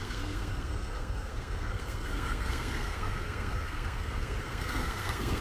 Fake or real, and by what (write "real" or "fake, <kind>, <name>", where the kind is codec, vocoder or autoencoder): fake, codec, SNAC